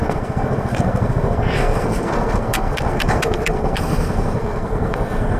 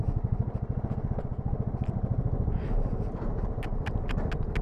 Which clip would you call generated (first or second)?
first